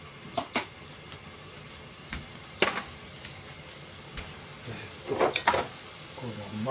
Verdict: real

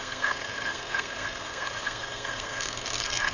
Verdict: fake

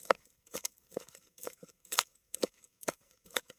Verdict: fake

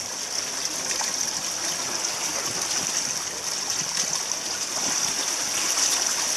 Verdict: real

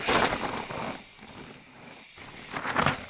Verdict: real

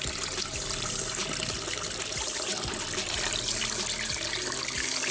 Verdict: real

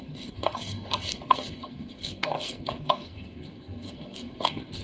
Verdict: fake